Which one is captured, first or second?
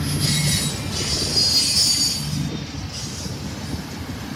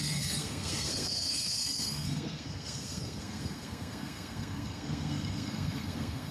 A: first